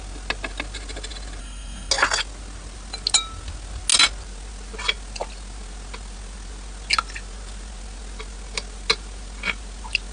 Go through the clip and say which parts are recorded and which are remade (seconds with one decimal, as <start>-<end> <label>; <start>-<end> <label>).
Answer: 0.0-1.4 recorded; 1.4-1.9 remade; 1.9-10.1 recorded